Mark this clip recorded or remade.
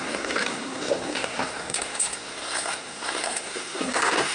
remade